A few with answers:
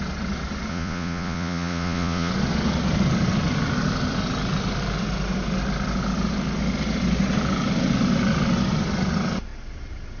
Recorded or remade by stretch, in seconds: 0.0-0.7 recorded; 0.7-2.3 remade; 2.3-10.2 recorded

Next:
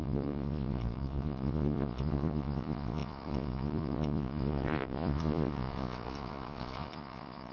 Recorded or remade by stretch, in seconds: 0.0-7.5 remade

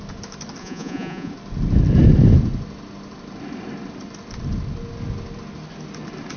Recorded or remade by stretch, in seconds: 0.0-0.6 recorded; 0.6-1.3 remade; 1.3-6.4 recorded

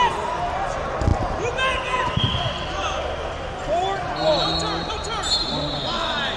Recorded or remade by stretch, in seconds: 0.0-6.4 recorded

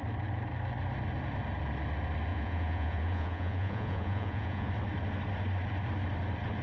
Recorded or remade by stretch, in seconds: 0.0-2.3 recorded; 2.3-4.7 remade; 4.7-6.6 recorded

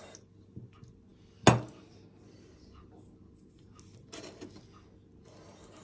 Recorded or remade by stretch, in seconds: 0.0-5.8 recorded

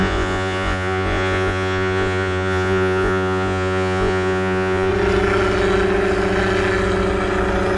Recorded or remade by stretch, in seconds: 0.0-4.9 remade; 4.9-7.8 recorded

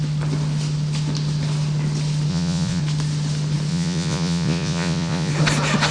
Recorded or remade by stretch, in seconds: 0.0-2.3 recorded; 2.3-2.8 remade; 2.8-3.7 recorded; 3.7-5.3 remade; 5.3-5.9 recorded